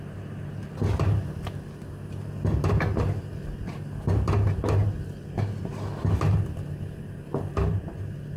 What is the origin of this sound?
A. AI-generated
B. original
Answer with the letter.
B